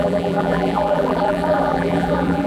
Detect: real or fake fake